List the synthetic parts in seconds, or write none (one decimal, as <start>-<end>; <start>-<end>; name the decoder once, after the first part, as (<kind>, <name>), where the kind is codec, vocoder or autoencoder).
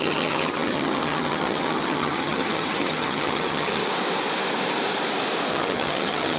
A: 0.0-3.8 (vocoder, HiFi-GAN); 5.5-6.4